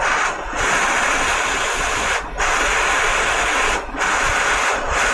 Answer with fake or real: real